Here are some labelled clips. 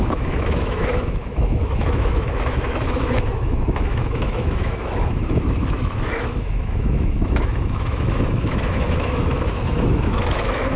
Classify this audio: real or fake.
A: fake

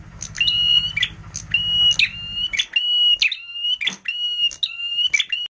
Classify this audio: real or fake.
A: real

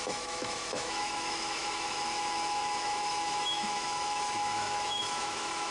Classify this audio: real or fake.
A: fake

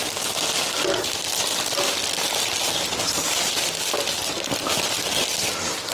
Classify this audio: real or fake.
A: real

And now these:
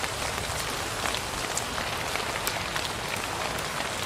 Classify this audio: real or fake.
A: real